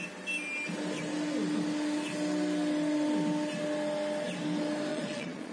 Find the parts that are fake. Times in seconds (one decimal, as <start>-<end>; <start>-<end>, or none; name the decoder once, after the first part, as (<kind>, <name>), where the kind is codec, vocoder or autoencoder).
4.9-5.5 (vocoder, Vocos)